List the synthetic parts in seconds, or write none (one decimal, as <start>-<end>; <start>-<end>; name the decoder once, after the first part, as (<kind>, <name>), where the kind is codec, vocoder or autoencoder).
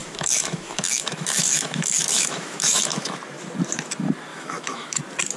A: 0.0-3.2 (autoencoder, DAC-VAE); 4.3-5.0